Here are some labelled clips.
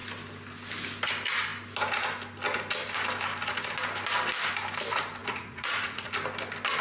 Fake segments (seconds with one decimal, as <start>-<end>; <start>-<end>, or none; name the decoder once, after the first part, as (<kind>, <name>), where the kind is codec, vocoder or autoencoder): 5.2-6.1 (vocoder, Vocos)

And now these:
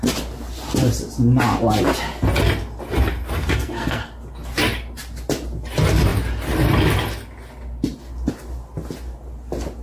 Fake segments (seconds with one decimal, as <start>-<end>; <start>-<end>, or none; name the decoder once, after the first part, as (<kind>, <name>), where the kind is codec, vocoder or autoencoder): 3.4-4.1 (codec, SNAC)

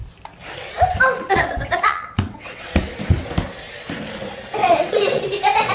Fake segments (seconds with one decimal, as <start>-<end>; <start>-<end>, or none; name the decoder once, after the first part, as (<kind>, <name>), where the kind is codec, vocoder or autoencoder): 1.1-2.7 (vocoder, WaveNeXt); 4.6-5.2